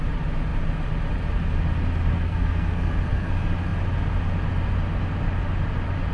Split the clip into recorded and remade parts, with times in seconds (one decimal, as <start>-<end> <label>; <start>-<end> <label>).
0.0-2.1 recorded; 2.1-3.3 remade; 3.3-6.1 recorded